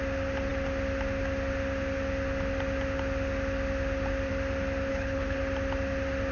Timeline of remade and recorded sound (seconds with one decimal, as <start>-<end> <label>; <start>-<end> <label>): 0.0-4.9 recorded; 4.9-5.4 remade; 5.4-6.3 recorded